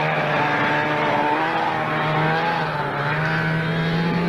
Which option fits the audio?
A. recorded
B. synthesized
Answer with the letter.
A